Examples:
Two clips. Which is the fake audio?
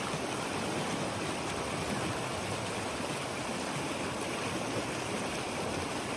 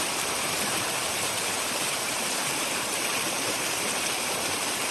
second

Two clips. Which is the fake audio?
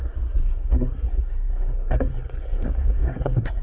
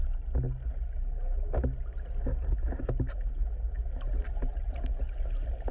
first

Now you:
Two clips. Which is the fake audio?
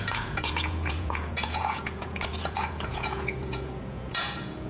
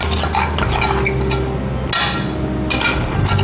first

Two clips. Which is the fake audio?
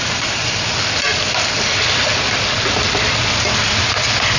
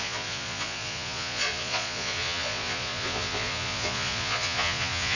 second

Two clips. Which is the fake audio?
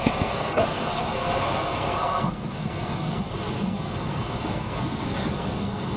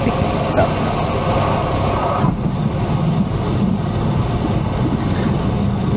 first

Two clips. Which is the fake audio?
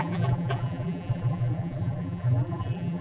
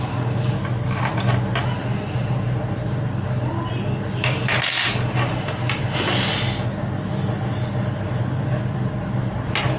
first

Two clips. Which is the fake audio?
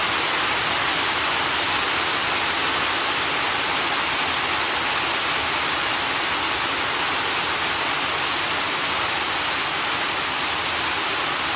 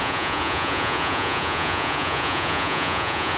second